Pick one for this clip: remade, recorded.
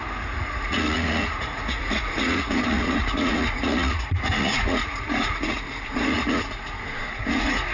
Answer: remade